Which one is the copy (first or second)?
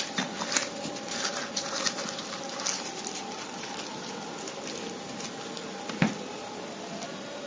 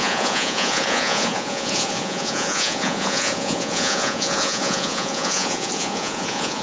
second